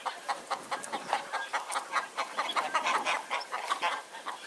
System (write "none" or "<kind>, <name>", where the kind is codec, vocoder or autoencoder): vocoder, BigVGAN v2